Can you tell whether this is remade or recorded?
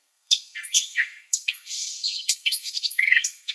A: remade